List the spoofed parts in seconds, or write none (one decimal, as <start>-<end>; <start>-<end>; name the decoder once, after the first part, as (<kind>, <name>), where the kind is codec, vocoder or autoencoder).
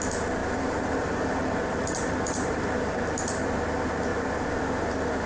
0.4-3.6 (vocoder, BigVGAN v2); 4.1-4.6